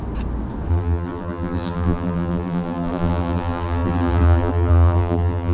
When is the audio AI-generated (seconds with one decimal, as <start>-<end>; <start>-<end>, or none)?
0.7-5.5

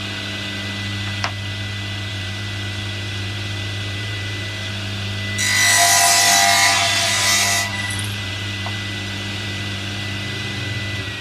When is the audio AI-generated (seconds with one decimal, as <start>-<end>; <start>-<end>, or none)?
2.1-4.7; 7.7-10.6

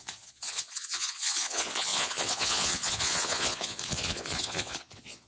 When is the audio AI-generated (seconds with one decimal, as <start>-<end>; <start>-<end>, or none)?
0.0-5.3

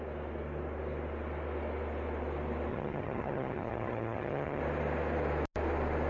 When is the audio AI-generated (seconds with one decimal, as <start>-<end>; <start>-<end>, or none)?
2.7-4.6

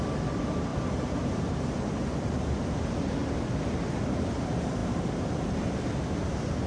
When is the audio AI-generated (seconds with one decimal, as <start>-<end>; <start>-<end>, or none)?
none

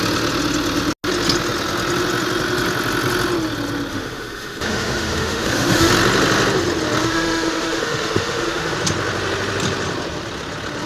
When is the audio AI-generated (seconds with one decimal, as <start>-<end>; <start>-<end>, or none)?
3.9-5.9; 7.0-8.7

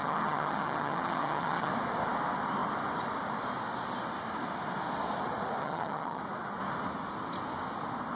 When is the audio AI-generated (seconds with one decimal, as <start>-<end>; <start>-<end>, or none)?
0.0-1.7; 5.6-6.2